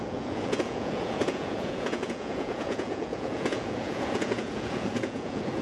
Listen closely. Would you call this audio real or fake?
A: fake